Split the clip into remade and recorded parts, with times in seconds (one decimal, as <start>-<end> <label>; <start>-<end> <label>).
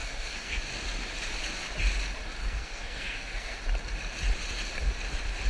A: 0.0-0.6 remade; 0.6-2.4 recorded; 2.4-3.6 remade; 3.6-5.5 recorded